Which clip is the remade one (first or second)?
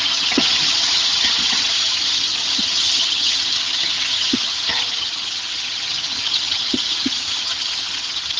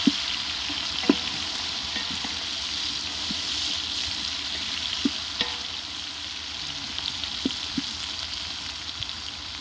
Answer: first